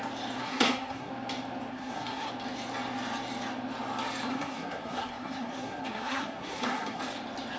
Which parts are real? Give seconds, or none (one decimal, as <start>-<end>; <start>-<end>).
0.0-0.4; 1.1-1.7; 2.3-4.3; 7.0-7.6